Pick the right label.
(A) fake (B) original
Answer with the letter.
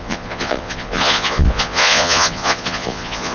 A